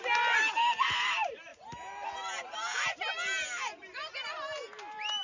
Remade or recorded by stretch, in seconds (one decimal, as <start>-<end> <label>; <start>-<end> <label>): 0.0-5.2 recorded